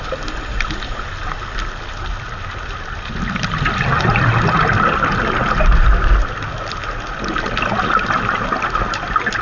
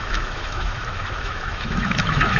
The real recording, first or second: first